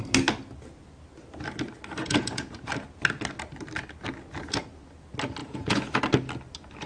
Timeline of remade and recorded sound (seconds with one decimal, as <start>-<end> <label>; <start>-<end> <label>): 0.0-2.0 recorded; 2.0-2.5 remade; 2.5-5.4 recorded; 5.4-6.0 remade; 6.0-6.9 recorded

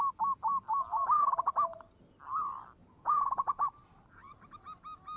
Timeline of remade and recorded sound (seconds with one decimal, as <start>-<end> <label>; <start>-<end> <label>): 0.0-2.8 recorded; 2.8-3.7 remade; 3.7-5.2 recorded

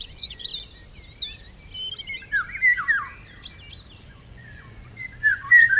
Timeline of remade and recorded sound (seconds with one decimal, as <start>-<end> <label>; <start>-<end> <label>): 0.0-0.5 remade; 0.5-4.0 recorded; 4.0-5.8 remade

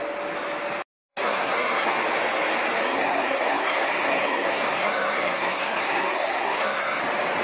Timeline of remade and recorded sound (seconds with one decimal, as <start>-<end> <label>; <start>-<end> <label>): 0.0-1.1 recorded; 1.1-1.9 remade; 1.9-2.8 recorded; 2.8-7.0 remade; 7.0-7.4 recorded